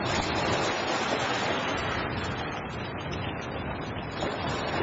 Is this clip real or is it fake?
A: real